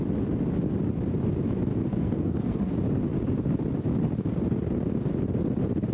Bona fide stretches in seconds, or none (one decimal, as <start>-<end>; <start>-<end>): 0.0-1.9; 2.7-5.9

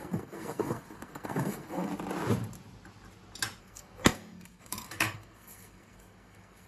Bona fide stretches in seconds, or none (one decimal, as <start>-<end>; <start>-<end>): 1.9-3.6